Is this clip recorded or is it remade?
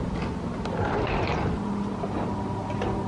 recorded